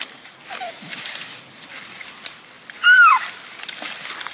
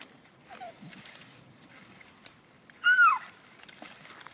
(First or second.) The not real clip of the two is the second